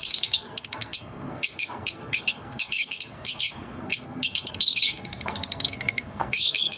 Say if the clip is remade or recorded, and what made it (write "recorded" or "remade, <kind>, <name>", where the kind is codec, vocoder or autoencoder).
remade, codec, SNAC